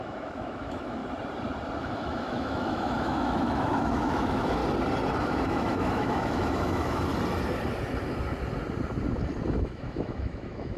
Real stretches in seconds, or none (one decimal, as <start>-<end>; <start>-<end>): 1.0-1.8; 4.6-5.2; 7.1-9.5